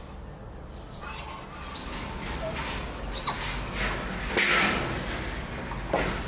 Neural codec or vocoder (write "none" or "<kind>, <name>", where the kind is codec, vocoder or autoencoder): none